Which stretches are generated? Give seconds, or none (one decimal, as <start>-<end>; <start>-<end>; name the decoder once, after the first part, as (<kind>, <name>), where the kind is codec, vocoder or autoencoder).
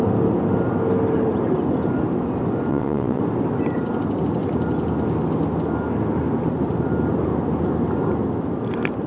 2.7-3.2 (vocoder, WaveNeXt)